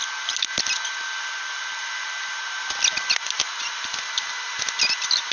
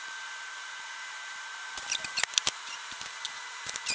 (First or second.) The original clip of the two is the first